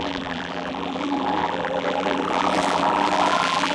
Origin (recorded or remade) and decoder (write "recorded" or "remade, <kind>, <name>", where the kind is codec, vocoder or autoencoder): remade, vocoder, BigVGAN v2